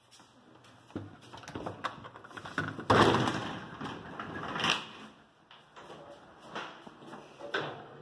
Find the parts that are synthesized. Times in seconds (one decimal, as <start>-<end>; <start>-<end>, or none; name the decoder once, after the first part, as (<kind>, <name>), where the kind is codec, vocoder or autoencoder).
none

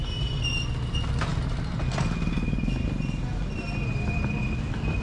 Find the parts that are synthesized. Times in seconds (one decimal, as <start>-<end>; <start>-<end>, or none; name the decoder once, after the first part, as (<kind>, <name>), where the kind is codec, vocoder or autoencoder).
none